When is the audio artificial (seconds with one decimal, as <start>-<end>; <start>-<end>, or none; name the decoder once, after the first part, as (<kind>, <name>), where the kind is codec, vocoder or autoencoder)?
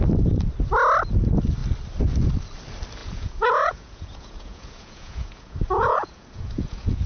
3.0-7.1 (vocoder, Vocos)